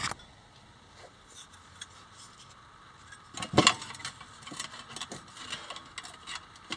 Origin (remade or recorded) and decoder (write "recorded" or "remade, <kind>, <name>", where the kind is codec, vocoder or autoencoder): recorded